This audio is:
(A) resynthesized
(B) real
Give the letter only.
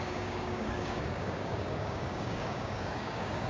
A